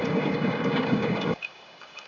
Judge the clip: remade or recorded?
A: remade